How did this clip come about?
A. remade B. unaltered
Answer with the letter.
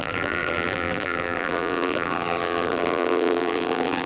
A